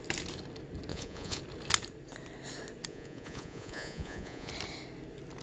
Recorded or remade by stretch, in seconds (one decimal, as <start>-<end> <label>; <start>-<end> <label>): 0.0-0.9 recorded; 0.9-1.4 remade; 1.4-2.9 recorded; 2.9-4.5 remade; 4.5-5.4 recorded